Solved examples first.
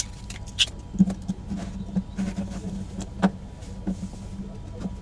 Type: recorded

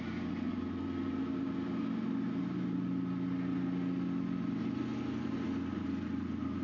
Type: recorded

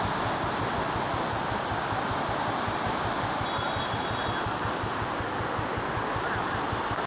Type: recorded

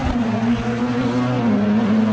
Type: recorded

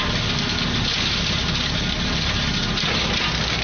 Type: recorded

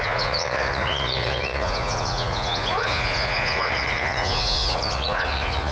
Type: remade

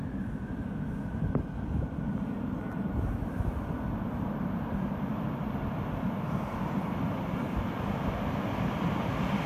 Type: recorded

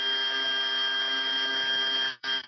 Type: remade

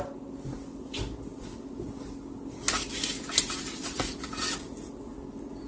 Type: recorded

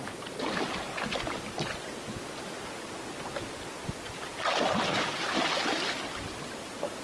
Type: recorded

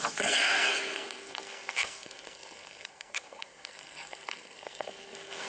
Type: remade